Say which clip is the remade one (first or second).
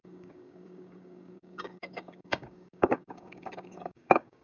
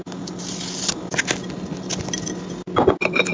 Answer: first